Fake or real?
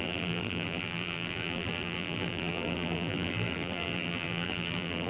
fake